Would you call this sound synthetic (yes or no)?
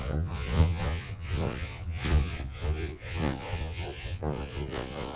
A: yes